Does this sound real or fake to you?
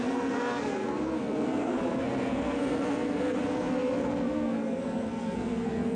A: fake